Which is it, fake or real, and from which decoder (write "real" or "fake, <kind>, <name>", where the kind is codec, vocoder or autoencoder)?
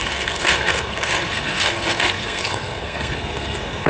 fake, codec, SNAC